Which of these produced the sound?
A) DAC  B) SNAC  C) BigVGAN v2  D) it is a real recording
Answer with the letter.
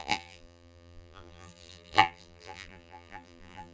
C